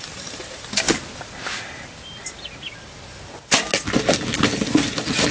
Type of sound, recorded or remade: recorded